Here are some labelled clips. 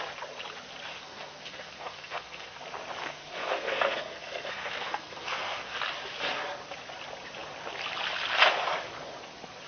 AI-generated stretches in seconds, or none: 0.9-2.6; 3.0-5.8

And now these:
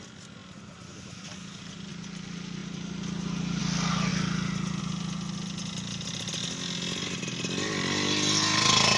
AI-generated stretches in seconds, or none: none

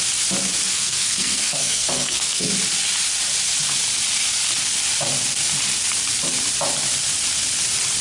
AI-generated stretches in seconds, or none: 0.7-2.5